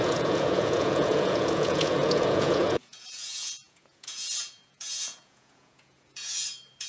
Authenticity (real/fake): fake